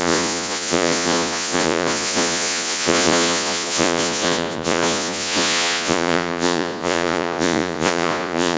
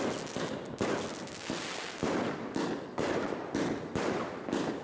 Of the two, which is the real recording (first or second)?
second